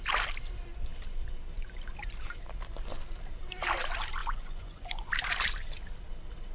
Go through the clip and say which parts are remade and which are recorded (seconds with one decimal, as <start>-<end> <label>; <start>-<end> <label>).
0.0-4.2 recorded; 4.2-5.1 remade; 5.1-6.5 recorded